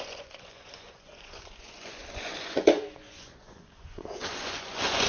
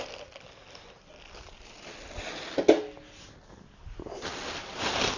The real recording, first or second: second